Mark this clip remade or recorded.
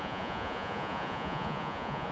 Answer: remade